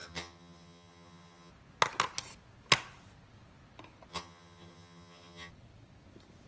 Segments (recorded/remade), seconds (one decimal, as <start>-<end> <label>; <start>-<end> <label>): 0.0-1.5 remade; 1.5-4.1 recorded; 4.1-5.5 remade; 5.5-6.5 recorded